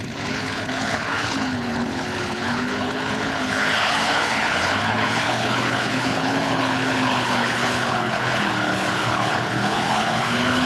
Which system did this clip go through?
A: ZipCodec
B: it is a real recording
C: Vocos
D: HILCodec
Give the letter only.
D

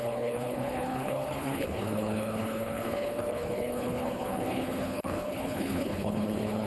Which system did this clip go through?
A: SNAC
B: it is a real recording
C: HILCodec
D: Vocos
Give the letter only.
C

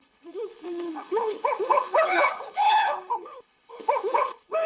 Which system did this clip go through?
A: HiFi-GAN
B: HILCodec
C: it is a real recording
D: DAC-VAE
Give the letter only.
B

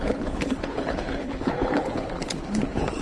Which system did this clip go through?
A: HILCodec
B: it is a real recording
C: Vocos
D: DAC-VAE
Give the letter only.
A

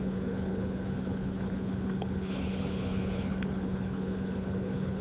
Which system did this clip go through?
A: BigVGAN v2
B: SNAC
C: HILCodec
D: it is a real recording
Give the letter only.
C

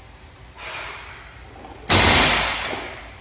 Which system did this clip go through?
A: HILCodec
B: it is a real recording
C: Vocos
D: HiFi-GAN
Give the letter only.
B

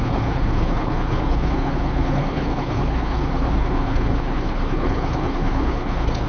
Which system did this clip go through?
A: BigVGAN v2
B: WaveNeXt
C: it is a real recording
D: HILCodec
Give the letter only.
D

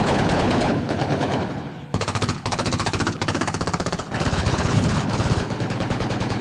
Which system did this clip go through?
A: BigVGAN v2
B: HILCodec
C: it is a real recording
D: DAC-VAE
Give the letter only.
B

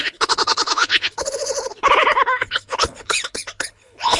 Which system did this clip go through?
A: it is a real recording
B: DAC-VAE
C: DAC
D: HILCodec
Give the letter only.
D